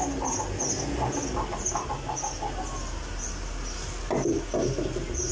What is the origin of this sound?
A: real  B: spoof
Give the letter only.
A